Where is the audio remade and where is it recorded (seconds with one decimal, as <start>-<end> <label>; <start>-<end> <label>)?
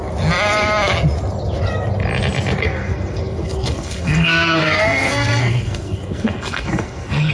0.0-2.7 recorded; 2.7-7.3 remade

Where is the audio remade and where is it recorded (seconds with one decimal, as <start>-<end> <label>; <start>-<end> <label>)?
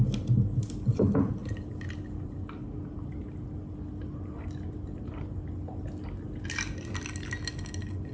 0.0-8.1 recorded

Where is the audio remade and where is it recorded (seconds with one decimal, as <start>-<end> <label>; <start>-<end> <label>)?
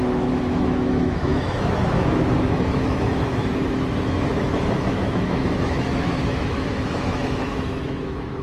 0.0-8.4 remade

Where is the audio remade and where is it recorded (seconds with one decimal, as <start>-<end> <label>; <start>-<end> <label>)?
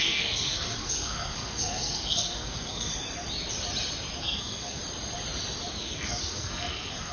0.0-2.9 remade; 2.9-4.2 recorded; 4.2-4.8 remade; 4.8-5.8 recorded; 5.8-7.1 remade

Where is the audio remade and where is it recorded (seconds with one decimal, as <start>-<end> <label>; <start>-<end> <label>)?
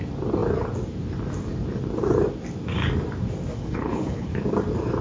0.0-3.5 recorded; 3.5-4.3 remade; 4.3-5.0 recorded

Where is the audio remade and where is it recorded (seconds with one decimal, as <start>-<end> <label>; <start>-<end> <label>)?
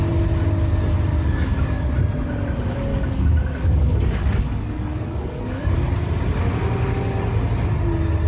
0.0-1.1 recorded; 1.1-1.9 remade; 1.9-2.9 recorded; 2.9-5.6 remade; 5.6-8.3 recorded